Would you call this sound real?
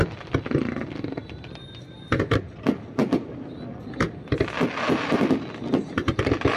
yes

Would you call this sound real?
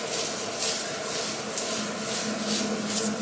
yes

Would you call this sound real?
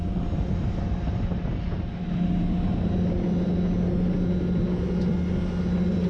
yes